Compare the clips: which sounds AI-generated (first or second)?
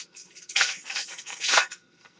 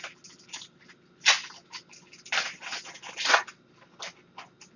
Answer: first